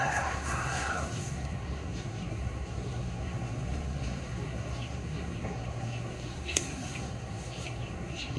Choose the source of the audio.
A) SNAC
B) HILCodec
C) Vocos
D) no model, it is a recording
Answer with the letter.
A